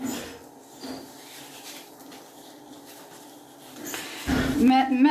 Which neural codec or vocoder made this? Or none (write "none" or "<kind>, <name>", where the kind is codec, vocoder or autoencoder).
none